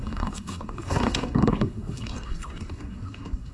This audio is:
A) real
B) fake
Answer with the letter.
B